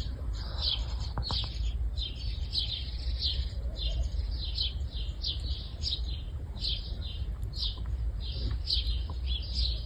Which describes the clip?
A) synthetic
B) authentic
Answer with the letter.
A